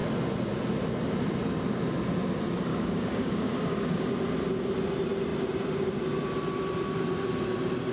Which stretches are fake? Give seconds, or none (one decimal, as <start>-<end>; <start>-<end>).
2.7-4.1